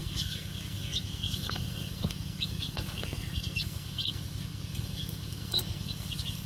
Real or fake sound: fake